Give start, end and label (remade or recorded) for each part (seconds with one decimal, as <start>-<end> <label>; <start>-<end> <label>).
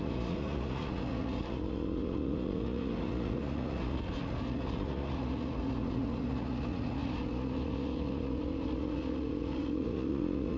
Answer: 0.0-10.6 remade